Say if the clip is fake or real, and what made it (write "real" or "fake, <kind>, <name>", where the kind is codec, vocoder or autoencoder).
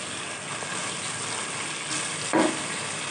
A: real